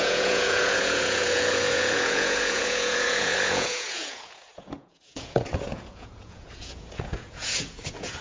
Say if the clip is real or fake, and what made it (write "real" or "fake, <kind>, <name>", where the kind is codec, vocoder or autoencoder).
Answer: fake, vocoder, Vocos